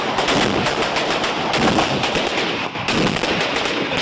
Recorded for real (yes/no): yes